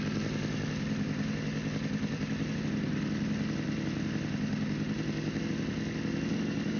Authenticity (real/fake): real